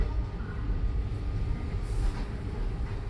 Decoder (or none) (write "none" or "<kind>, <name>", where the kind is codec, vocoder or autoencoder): none